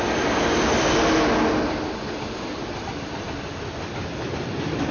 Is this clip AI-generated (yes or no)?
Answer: no